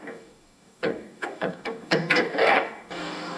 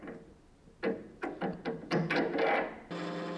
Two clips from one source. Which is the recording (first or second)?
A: second